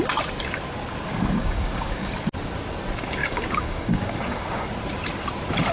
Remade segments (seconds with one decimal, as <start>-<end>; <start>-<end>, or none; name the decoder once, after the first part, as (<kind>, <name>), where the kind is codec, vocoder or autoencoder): 1.4-2.1 (codec, DAC); 3.2-4.7